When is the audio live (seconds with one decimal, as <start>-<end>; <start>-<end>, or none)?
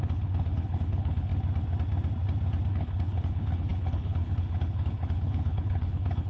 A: 1.3-2.7